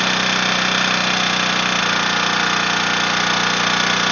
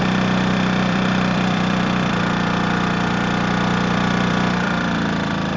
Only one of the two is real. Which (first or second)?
first